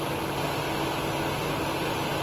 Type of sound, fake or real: real